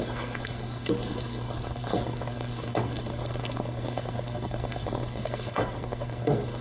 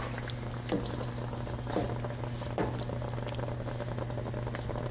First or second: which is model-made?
first